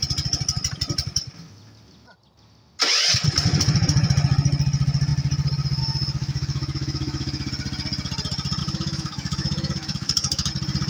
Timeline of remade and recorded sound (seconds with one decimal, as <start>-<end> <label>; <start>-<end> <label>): 0.0-6.2 recorded; 6.2-7.5 remade; 7.5-8.6 recorded; 8.6-10.5 remade; 10.5-10.9 recorded